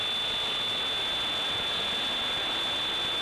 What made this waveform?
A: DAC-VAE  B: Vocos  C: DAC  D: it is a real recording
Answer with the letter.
D